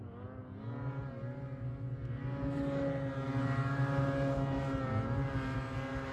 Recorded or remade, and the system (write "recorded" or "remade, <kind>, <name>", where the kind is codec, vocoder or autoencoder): recorded